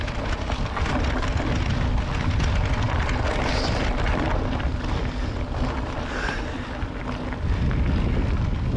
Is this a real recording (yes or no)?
yes